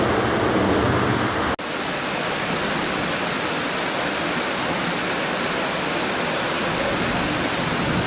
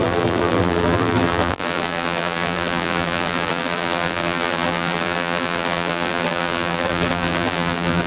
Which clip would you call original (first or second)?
first